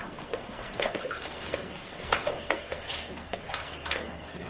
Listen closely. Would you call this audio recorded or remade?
remade